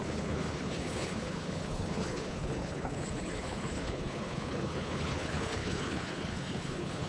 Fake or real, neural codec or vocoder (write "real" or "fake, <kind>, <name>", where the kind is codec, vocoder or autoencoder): fake, codec, HILCodec